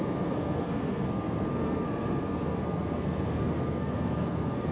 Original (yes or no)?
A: no